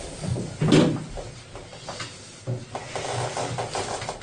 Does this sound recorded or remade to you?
recorded